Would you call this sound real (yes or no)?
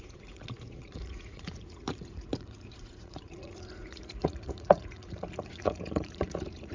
no